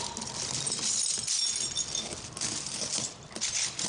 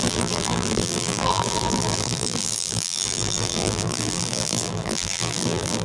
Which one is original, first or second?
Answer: first